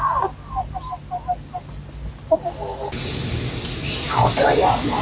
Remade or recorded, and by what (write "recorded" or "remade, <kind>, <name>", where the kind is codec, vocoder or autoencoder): recorded